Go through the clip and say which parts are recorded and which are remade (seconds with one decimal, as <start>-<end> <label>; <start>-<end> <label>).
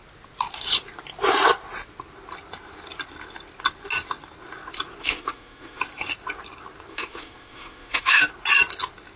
0.0-5.0 recorded; 5.0-5.8 remade; 5.8-6.9 recorded; 6.9-8.3 remade; 8.3-9.2 recorded